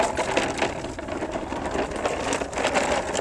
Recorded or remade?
recorded